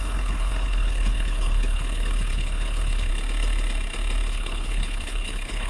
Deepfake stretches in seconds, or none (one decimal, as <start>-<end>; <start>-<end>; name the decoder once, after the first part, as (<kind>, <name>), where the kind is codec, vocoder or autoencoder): 0.0-3.1 (codec, HILCodec); 4.3-5.7